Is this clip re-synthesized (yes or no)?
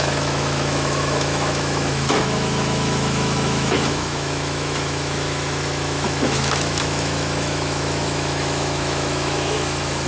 yes